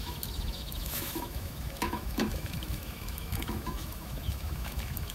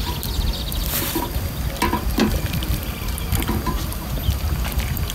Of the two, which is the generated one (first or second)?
first